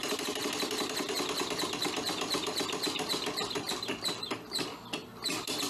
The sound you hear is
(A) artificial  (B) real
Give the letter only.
B